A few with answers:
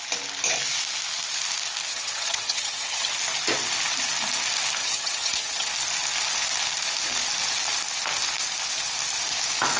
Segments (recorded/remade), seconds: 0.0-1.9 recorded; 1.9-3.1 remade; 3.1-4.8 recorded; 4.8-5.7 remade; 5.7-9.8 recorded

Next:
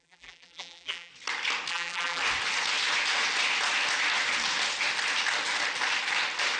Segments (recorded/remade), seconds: 0.0-1.1 remade; 1.1-1.7 recorded; 1.7-2.2 remade; 2.2-6.6 recorded

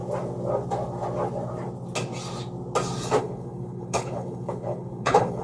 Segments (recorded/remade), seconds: 0.0-3.2 recorded; 3.2-5.4 remade

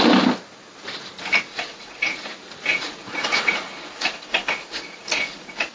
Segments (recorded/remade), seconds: 0.0-1.5 recorded; 1.5-2.2 remade; 2.2-2.7 recorded; 2.7-5.7 remade

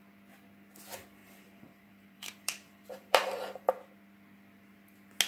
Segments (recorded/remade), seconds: 0.0-1.2 recorded; 1.2-3.7 remade; 3.7-5.3 recorded

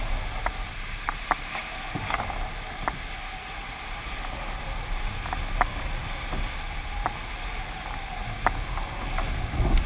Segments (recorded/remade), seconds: 0.0-9.9 recorded

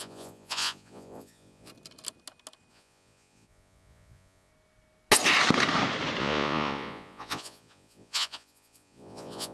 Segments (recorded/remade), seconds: 0.0-1.7 remade; 1.7-2.7 recorded; 2.7-4.5 remade; 4.5-6.2 recorded; 6.2-9.5 remade

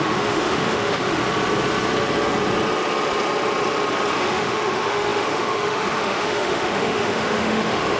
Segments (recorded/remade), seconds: 0.0-1.2 remade; 1.2-4.1 recorded; 4.1-8.0 remade